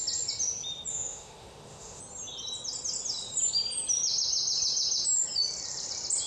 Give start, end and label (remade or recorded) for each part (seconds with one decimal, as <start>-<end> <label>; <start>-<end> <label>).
0.0-0.9 recorded; 0.9-2.0 remade; 2.0-6.3 recorded